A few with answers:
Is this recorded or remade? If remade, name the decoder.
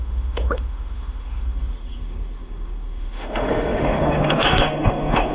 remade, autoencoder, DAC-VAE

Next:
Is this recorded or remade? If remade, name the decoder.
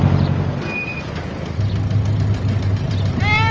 recorded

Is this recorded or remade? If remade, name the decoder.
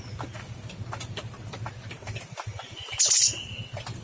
recorded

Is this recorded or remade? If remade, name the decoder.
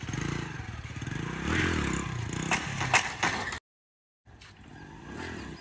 recorded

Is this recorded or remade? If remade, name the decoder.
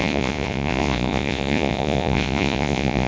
remade, vocoder, Vocos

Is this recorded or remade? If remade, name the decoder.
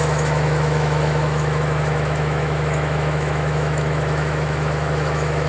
remade, autoencoder, DAC-VAE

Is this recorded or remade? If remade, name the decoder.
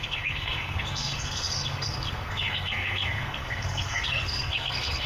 remade, codec, SNAC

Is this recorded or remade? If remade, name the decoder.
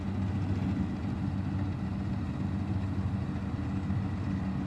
recorded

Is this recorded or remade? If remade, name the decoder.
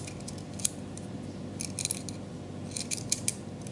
recorded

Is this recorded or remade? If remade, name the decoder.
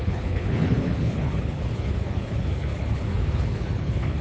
remade, codec, HILCodec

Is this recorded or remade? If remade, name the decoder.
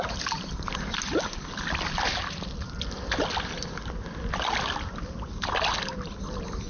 recorded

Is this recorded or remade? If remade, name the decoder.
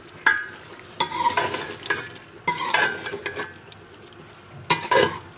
recorded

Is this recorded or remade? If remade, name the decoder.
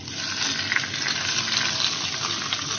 recorded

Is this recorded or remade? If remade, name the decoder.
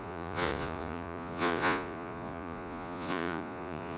remade, vocoder, Vocos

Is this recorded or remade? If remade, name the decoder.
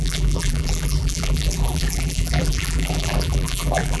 remade, vocoder, BigVGAN v2